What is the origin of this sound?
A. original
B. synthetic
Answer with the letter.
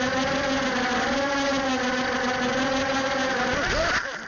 A